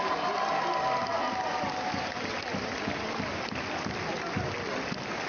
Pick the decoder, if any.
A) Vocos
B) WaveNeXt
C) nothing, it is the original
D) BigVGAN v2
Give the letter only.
C